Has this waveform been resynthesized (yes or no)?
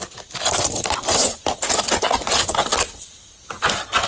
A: no